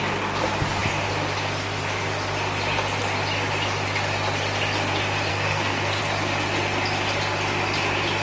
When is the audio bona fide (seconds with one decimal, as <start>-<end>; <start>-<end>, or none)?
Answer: 0.0-5.3; 6.0-8.2